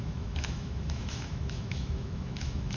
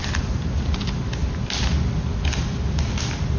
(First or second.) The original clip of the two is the second